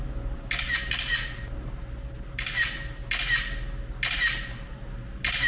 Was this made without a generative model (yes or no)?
yes